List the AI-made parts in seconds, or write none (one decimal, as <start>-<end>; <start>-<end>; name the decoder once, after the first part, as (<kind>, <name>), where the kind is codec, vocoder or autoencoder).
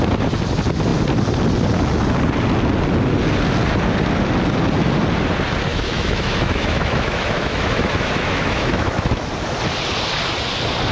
5.7-9.3 (autoencoder, DAC-VAE)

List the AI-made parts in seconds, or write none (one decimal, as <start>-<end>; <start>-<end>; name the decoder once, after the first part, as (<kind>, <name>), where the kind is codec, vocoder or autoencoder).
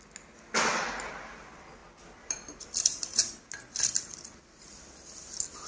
none